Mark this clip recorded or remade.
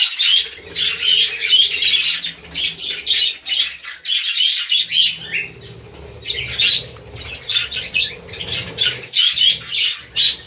recorded